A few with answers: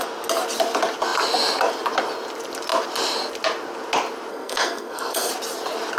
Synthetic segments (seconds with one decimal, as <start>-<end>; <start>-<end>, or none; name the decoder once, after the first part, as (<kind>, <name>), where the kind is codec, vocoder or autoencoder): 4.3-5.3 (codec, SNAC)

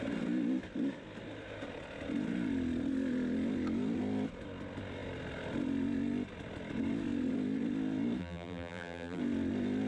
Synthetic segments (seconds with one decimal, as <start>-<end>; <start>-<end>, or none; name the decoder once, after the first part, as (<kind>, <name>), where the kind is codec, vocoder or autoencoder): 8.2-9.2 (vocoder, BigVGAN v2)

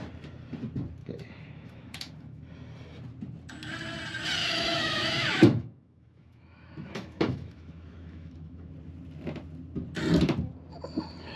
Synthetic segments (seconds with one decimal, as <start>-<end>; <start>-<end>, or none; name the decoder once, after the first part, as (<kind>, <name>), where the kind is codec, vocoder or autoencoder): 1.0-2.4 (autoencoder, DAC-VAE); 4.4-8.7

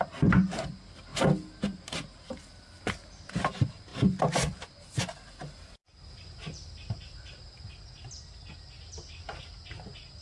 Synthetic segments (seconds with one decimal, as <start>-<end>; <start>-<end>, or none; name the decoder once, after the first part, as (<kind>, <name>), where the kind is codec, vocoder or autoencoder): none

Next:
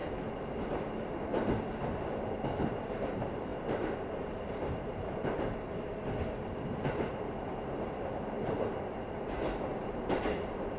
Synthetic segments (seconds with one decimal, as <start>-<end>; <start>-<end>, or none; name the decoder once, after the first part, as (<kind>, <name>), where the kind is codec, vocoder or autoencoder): 2.7-10.8 (vocoder, BigVGAN v2)

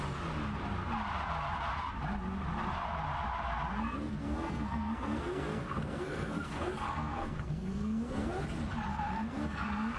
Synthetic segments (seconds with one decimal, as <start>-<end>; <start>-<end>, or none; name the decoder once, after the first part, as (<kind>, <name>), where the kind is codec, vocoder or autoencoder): 3.7-8.3 (codec, SNAC); 8.9-10.0